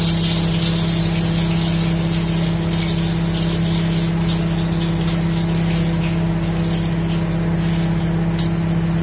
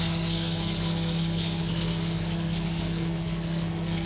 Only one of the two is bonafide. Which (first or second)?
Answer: first